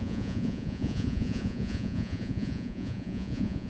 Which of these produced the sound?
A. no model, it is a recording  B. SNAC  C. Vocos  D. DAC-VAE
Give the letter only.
C